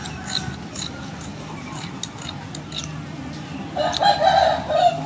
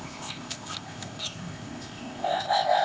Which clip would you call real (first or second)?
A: first